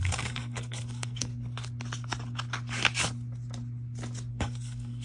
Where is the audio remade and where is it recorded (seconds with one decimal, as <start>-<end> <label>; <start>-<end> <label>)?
0.0-1.3 remade; 1.3-4.3 recorded; 4.3-5.0 remade